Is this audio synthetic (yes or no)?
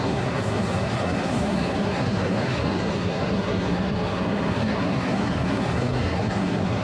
yes